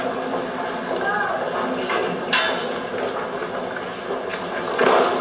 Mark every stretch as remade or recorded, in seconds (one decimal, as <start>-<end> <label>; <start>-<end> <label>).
0.0-5.2 recorded